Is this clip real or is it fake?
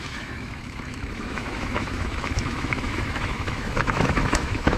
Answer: fake